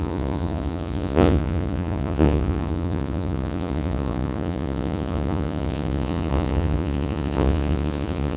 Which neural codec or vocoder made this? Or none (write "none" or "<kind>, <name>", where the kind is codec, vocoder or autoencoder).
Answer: vocoder, Vocos